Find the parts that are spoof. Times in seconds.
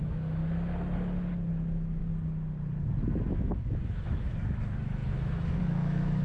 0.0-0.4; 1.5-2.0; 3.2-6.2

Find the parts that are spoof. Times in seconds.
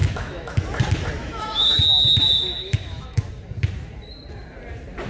0.0-0.6; 1.2-1.8; 2.6-3.3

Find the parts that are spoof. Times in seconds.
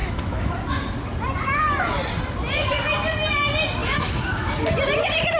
0.0-0.5; 3.8-4.5